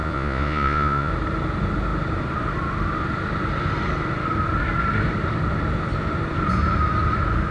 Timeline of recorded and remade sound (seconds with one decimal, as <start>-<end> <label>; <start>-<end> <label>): 0.0-1.1 remade; 1.1-7.5 recorded